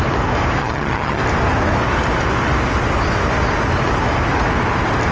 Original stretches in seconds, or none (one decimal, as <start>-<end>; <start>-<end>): 0.0-0.6; 1.2-5.1